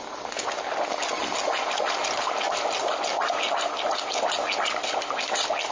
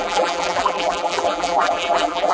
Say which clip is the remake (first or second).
second